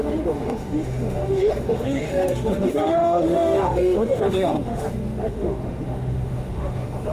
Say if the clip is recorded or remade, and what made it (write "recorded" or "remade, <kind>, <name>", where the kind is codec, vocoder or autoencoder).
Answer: remade, autoencoder, DAC-VAE